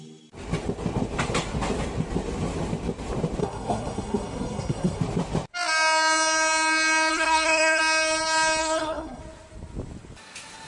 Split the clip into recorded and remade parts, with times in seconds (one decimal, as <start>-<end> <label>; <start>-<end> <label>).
0.0-3.4 recorded; 3.4-5.0 remade; 5.0-7.1 recorded; 7.1-7.8 remade; 7.8-8.6 recorded; 8.6-9.2 remade; 9.2-10.7 recorded